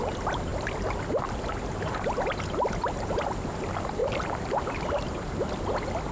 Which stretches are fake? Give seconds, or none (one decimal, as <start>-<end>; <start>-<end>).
none